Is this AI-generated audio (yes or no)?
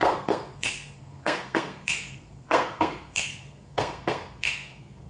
yes